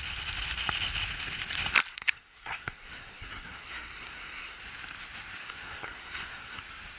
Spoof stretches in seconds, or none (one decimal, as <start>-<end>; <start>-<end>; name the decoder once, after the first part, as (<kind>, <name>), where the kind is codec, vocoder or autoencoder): 1.9-4.6 (codec, SNAC); 5.4-6.6